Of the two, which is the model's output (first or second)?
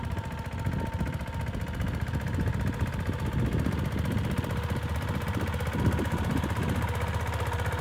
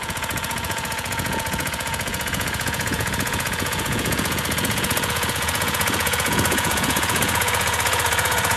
second